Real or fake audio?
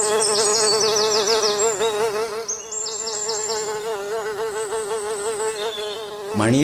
real